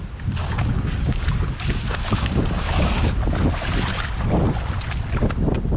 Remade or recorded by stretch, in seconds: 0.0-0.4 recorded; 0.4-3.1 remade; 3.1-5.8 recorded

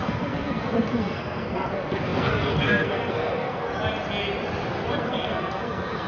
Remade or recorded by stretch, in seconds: 0.0-3.7 remade; 3.7-4.9 recorded; 4.9-6.1 remade

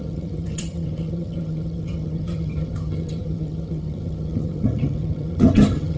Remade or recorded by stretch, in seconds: 0.0-6.0 remade

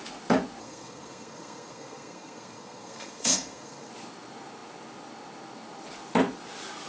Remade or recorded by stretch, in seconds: 0.0-0.6 recorded; 0.6-3.9 remade; 3.9-6.9 recorded